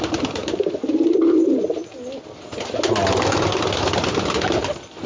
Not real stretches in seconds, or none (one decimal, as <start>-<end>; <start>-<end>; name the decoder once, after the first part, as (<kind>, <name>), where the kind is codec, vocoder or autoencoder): none